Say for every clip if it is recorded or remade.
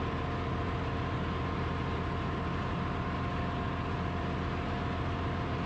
recorded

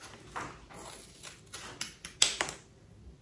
recorded